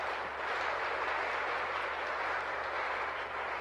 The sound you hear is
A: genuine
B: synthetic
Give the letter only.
A